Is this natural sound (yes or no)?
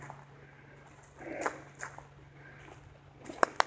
yes